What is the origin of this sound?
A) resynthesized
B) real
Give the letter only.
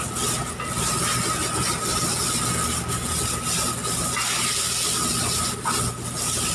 B